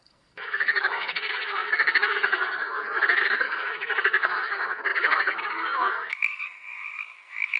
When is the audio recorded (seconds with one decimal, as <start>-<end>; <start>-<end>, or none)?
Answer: none